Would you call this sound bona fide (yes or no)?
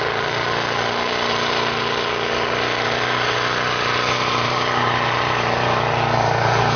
yes